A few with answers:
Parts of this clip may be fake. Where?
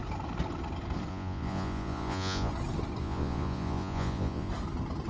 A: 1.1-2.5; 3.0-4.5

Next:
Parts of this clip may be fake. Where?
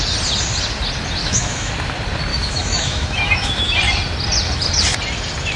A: 1.2-1.7; 2.3-3.8